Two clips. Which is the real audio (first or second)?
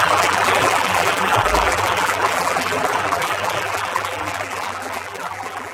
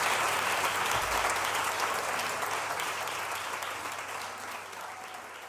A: second